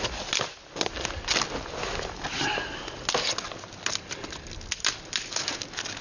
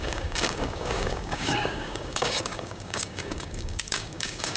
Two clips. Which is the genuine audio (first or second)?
first